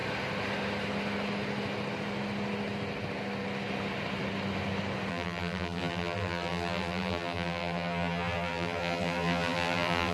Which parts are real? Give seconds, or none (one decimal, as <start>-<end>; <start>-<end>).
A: 0.0-5.1